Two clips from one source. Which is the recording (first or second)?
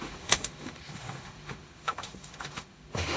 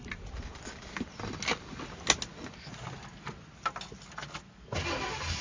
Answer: second